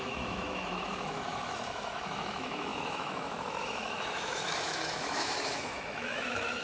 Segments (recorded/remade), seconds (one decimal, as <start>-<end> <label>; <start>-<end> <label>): 0.0-6.6 remade